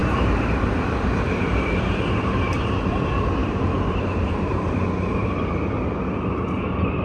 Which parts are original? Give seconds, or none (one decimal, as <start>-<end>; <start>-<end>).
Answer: 3.0-3.4; 4.9-7.0